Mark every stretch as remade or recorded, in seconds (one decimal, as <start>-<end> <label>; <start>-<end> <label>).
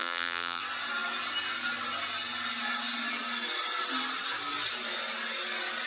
0.0-0.6 remade; 0.6-5.9 recorded